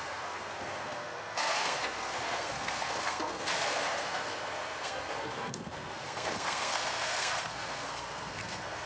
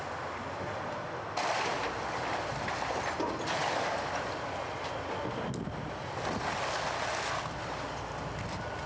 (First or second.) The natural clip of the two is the second